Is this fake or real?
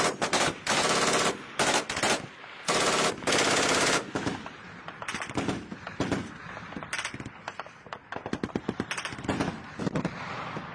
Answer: real